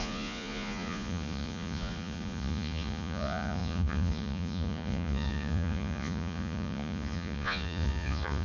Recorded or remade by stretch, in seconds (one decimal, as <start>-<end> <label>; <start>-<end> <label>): 0.0-8.4 remade